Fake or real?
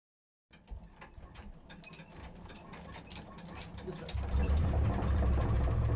real